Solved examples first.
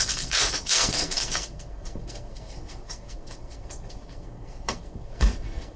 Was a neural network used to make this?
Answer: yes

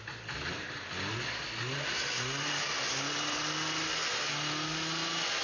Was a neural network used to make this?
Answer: no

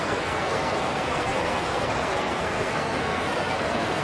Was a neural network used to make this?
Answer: yes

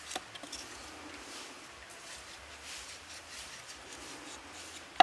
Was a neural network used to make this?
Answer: no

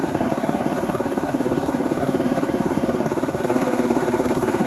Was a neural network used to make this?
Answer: yes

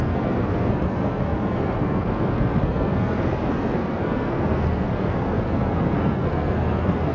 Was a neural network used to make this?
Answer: yes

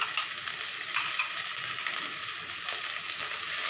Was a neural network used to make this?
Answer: no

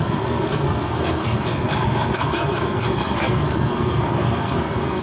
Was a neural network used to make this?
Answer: yes